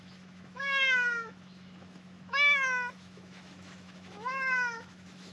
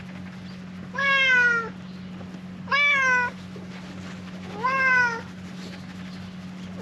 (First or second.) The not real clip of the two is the first